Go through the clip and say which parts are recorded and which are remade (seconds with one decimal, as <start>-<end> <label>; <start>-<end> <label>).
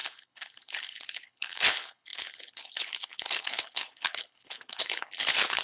0.0-5.6 remade